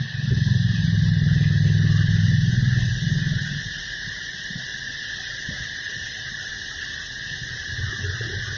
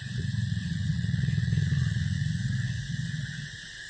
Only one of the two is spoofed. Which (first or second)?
second